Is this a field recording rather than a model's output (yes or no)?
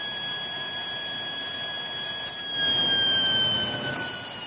yes